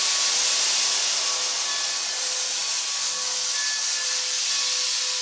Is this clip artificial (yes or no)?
no